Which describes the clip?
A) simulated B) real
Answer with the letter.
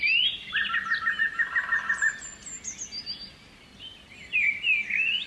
B